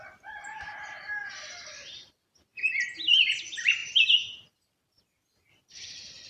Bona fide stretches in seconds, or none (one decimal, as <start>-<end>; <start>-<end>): 2.5-3.1